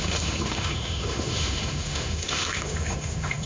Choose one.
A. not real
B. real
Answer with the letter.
A